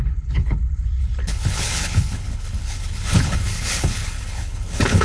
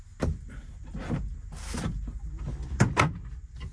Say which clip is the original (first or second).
second